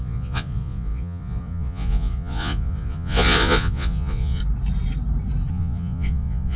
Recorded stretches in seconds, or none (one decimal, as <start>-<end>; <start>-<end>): 4.4-5.5